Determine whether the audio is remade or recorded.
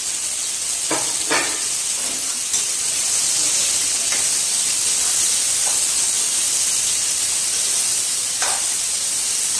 recorded